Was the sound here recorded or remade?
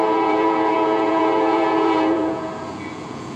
remade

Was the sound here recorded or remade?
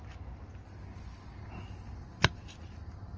recorded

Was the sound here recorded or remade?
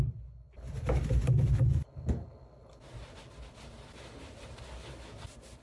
recorded